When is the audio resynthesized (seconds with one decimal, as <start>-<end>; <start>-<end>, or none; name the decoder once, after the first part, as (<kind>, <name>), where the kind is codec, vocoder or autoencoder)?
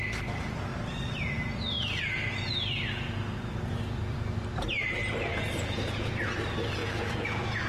5.3-6.1 (vocoder, Vocos); 6.8-7.7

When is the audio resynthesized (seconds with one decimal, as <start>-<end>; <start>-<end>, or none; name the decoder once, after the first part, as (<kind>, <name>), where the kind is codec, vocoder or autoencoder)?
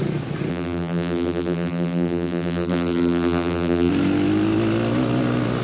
0.5-3.9 (vocoder, BigVGAN v2)